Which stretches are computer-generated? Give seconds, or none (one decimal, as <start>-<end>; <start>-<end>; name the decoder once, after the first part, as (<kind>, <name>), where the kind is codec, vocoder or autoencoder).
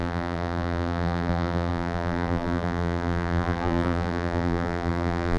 0.0-5.4 (vocoder, BigVGAN v2)